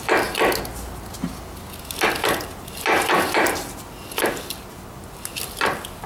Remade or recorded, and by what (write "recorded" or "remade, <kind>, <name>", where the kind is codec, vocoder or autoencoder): recorded